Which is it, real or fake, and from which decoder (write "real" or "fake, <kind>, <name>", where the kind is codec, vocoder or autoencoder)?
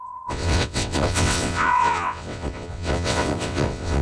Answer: fake, vocoder, WaveNeXt